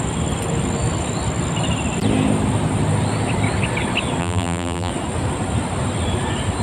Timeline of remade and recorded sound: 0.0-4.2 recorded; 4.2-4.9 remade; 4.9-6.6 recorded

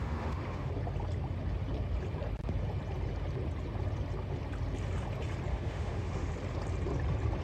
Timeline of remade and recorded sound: 0.0-0.7 remade; 0.7-5.5 recorded; 5.5-6.3 remade; 6.3-7.4 recorded